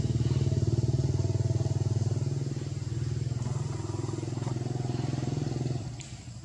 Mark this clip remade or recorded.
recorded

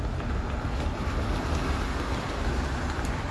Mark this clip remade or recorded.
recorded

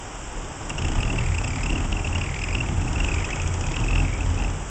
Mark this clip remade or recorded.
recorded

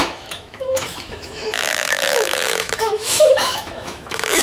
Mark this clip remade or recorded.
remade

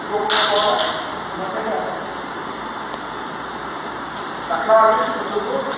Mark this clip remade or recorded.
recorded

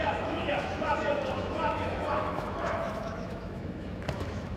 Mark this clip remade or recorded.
remade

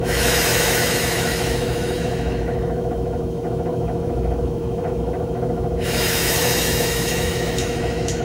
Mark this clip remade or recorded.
remade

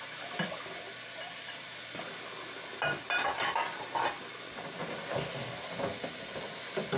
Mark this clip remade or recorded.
recorded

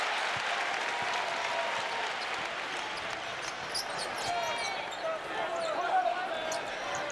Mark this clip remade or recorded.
recorded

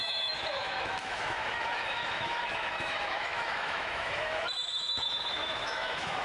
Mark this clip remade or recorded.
remade